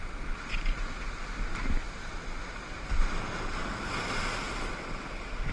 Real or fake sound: real